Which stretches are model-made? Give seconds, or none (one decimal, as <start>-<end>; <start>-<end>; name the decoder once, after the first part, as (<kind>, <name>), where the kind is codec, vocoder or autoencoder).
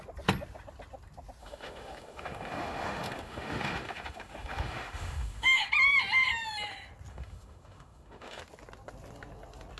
1.4-5.7 (autoencoder, DAC-VAE); 7.1-8.4